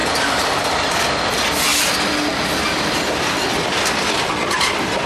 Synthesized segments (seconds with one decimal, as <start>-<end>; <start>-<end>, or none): 0.0-0.9

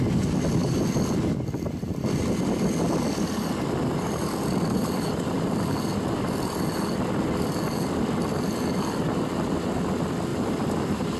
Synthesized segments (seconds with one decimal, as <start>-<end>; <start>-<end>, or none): 10.3-11.2

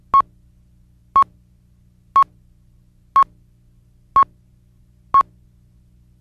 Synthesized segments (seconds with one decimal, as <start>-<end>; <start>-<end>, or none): none

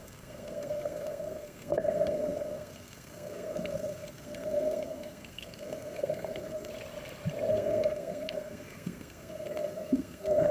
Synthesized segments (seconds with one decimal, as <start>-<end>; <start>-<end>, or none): 0.0-6.7; 7.5-10.5

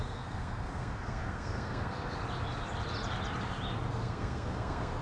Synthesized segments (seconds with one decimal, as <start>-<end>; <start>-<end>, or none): 0.0-2.2; 3.9-5.0

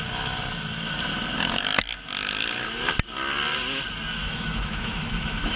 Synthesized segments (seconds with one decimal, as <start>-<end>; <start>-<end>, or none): 4.2-5.6